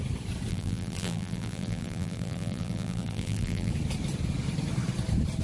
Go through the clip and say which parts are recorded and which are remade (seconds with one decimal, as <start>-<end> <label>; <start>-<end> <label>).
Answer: 0.0-0.5 recorded; 0.5-3.7 remade; 3.7-5.4 recorded